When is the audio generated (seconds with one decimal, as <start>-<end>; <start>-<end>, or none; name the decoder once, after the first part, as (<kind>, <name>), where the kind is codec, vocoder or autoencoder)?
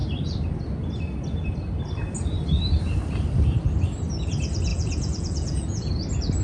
4.7-5.9 (vocoder, Vocos)